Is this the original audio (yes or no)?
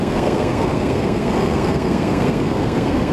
no